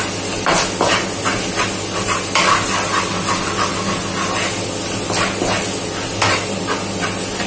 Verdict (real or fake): real